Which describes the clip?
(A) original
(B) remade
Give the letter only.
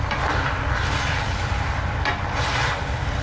B